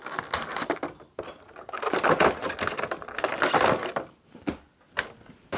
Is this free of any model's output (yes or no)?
yes